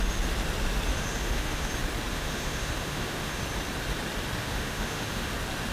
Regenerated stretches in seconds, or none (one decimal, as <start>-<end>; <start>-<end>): 0.9-1.7; 2.1-3.4; 4.4-5.3